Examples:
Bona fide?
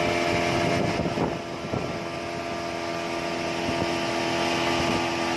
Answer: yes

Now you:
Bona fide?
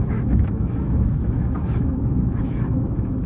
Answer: no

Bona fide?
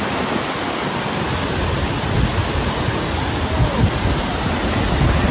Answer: yes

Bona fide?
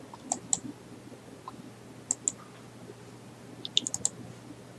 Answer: yes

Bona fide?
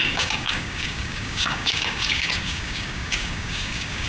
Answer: no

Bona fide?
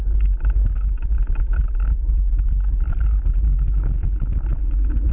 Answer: yes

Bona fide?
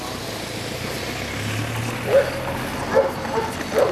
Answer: yes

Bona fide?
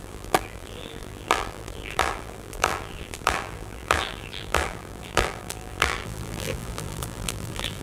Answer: no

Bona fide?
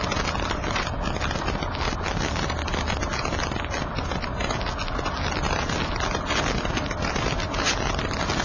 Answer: yes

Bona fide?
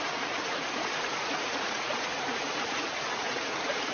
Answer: no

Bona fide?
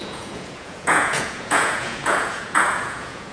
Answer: no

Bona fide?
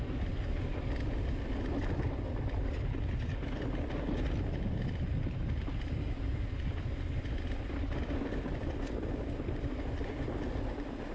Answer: yes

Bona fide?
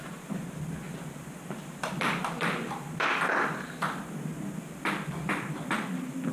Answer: no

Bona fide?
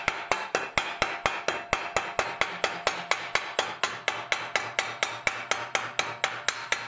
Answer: yes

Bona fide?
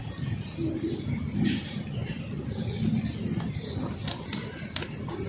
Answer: yes